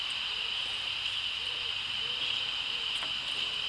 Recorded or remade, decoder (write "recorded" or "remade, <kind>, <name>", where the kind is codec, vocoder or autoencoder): remade, vocoder, BigVGAN v2